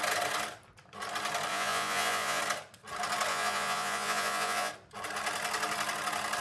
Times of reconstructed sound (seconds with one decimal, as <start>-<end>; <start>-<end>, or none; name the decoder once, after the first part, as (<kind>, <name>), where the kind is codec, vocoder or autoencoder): 1.5-2.4 (vocoder, Vocos); 3.3-4.7

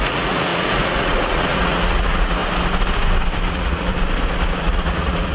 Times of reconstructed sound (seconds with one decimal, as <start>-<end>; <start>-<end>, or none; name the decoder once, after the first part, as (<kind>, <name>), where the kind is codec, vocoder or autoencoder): 0.0-2.4 (vocoder, Vocos); 3.5-3.9; 4.6-5.3

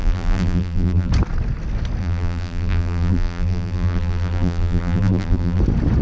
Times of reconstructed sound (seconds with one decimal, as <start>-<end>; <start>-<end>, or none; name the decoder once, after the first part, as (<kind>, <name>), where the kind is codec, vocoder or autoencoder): 0.0-1.1 (vocoder, BigVGAN v2); 2.0-5.6

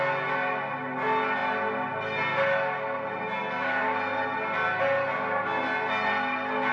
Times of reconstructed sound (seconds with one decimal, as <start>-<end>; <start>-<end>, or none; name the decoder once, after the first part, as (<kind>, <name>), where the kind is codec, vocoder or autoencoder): none

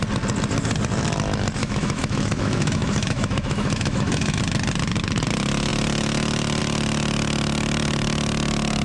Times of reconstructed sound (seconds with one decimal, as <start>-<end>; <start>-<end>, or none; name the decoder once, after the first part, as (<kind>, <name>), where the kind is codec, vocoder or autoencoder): 1.6-4.4 (autoencoder, DAC-VAE)

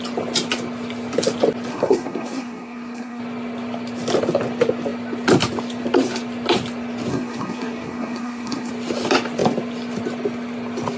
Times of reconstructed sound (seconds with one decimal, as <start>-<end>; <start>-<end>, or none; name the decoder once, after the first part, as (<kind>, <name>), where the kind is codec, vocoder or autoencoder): 1.7-3.2 (codec, SNAC); 7.1-8.7

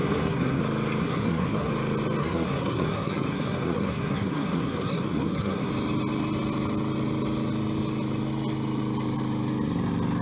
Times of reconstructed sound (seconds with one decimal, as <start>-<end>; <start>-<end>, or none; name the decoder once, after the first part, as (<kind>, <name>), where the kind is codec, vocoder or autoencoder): 0.0-0.6 (codec, SNAC); 1.0-1.7; 2.2-5.7